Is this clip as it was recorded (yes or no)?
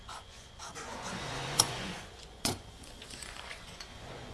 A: no